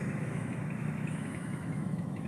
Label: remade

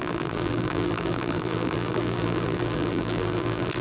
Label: remade